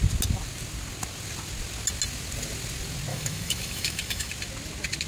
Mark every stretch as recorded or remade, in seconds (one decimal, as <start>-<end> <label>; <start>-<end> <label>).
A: 0.0-3.1 recorded; 3.1-4.3 remade; 4.3-5.1 recorded